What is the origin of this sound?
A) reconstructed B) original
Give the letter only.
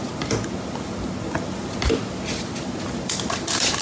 B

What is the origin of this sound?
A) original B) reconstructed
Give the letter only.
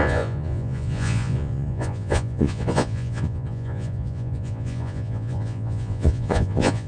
B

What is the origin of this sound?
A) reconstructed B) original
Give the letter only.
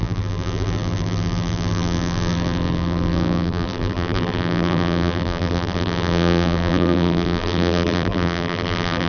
A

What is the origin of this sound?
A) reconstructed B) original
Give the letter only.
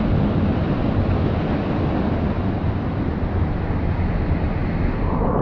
B